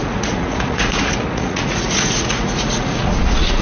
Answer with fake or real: fake